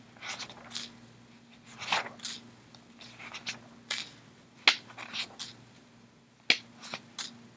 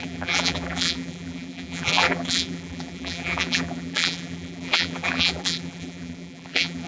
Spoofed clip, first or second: second